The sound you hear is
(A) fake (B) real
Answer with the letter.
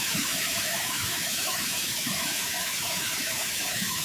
A